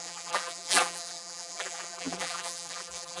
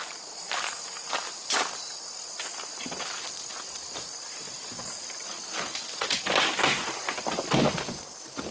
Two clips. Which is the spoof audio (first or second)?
first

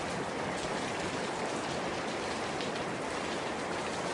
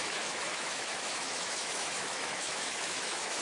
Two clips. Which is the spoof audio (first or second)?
second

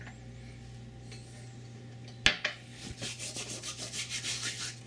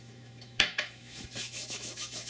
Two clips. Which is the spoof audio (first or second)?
second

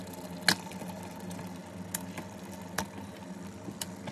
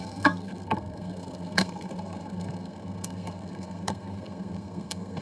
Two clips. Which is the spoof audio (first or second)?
second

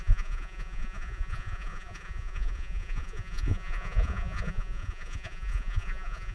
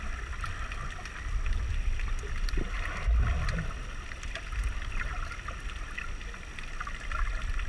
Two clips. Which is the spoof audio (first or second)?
first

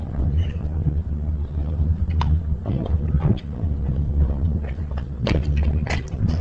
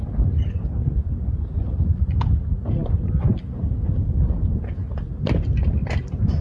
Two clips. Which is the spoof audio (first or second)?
first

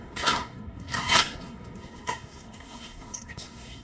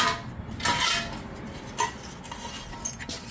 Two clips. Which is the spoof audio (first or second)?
first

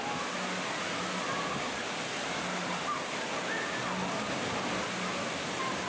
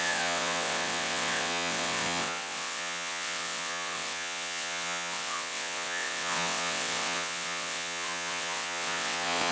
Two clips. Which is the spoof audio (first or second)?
second